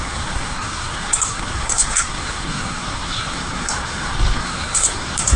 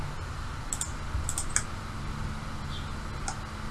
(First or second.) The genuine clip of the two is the second